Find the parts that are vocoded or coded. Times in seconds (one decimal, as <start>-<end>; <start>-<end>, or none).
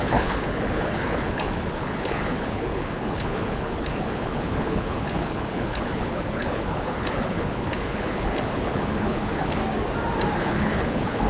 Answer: 0.0-9.6; 10.4-11.3